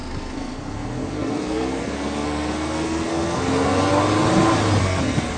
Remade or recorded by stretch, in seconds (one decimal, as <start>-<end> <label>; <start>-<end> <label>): 0.0-3.9 remade; 3.9-4.8 recorded; 4.8-5.4 remade